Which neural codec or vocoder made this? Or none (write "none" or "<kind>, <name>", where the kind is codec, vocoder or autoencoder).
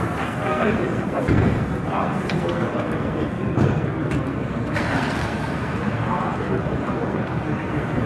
codec, SNAC